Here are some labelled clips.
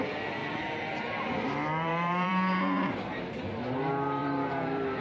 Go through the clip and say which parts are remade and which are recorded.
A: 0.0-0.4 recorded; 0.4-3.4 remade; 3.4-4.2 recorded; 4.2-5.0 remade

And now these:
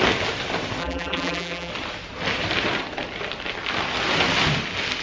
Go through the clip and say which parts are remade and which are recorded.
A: 0.0-0.8 recorded; 0.8-1.7 remade; 1.7-5.0 recorded

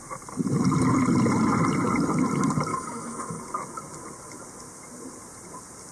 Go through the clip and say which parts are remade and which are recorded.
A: 0.0-2.7 recorded; 2.7-3.4 remade; 3.4-5.9 recorded

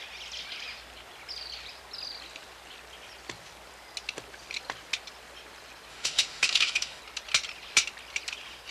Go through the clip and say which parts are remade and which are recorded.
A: 0.0-5.9 recorded; 5.9-7.0 remade; 7.0-8.7 recorded

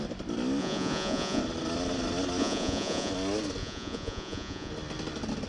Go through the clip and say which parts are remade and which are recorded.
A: 0.0-0.6 recorded; 0.6-1.4 remade; 1.4-2.4 recorded; 2.4-3.1 remade; 3.1-3.6 recorded; 3.6-4.7 remade; 4.7-5.5 recorded

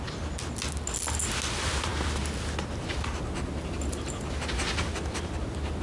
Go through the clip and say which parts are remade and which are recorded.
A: 0.0-5.8 recorded

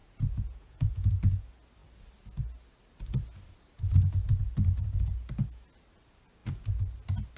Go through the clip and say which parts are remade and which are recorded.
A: 0.0-1.1 remade; 1.1-7.4 recorded

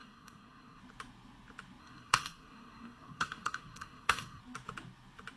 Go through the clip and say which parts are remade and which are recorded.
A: 0.0-0.8 remade; 0.8-1.8 recorded; 1.8-4.4 remade; 4.4-5.4 recorded